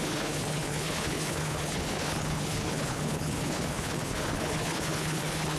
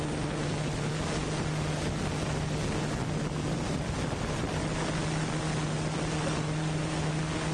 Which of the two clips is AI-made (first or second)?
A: first